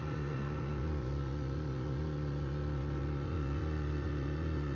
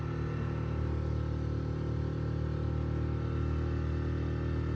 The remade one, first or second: first